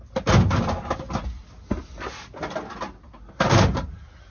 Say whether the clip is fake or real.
real